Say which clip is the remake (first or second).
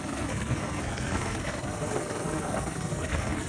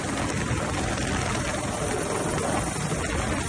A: first